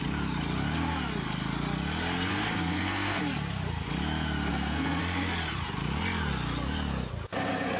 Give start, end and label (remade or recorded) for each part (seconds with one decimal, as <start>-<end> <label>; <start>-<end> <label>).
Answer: 0.0-2.3 recorded; 2.3-3.2 remade; 3.2-4.5 recorded; 4.5-5.0 remade; 5.0-7.8 recorded